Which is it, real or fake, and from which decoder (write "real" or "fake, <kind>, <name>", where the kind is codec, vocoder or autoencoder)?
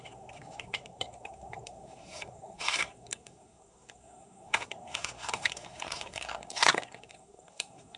fake, codec, SNAC